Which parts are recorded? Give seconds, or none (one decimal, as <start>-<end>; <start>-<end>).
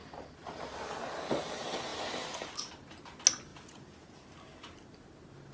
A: 0.0-3.5; 4.2-5.5